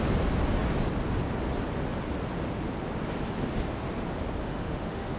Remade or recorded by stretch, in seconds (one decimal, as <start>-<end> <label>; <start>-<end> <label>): 0.0-4.4 recorded; 4.4-5.2 remade